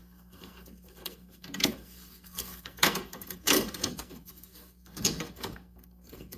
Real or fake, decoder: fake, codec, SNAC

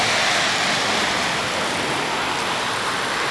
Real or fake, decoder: real